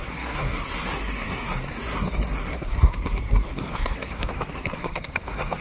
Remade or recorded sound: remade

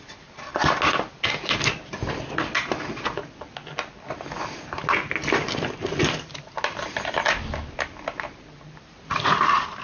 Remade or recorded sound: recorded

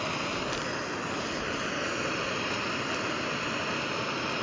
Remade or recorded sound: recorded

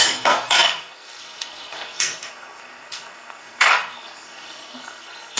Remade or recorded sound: remade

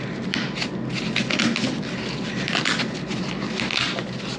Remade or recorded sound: recorded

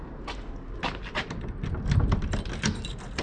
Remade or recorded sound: recorded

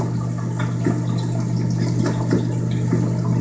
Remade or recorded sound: recorded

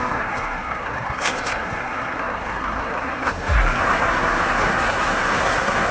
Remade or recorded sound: remade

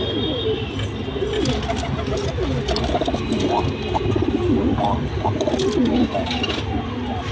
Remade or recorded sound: recorded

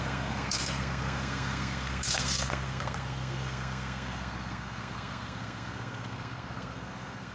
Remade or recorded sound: remade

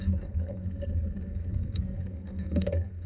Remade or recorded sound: remade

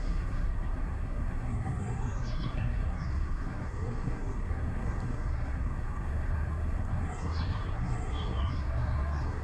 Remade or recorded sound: remade